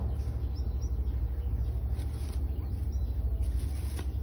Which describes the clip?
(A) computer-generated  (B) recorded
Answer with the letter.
B